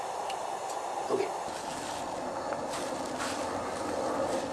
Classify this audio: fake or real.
real